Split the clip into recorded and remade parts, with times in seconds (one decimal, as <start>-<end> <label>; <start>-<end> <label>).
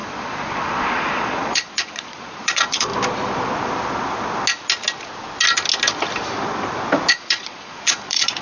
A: 0.0-2.9 remade; 2.9-7.1 recorded; 7.1-8.4 remade